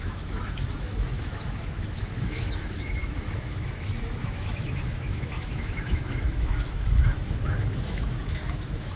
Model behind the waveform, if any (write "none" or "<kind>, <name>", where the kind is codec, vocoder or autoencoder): autoencoder, DAC-VAE